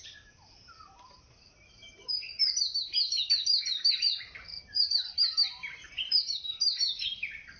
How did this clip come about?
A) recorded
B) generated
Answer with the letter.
B